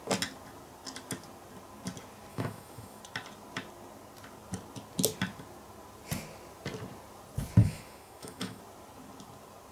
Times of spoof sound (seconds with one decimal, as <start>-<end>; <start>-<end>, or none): 2.3-3.0; 7.6-8.6